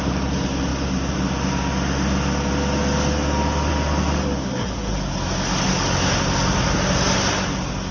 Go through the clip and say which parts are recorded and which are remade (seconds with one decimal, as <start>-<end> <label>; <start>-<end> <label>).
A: 0.0-7.9 recorded